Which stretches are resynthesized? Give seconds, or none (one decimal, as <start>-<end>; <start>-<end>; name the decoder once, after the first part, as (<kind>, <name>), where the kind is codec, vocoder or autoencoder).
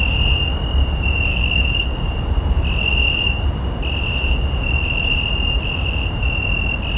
1.3-2.1 (codec, DAC)